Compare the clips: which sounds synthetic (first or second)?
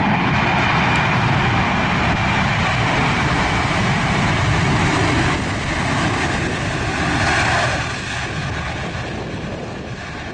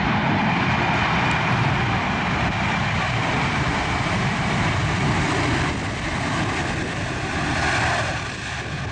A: second